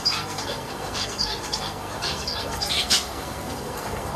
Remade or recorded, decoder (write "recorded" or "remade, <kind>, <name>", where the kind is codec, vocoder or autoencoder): remade, codec, SNAC